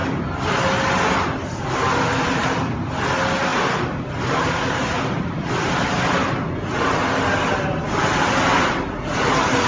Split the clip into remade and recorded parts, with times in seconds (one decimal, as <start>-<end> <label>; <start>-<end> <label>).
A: 0.0-9.7 recorded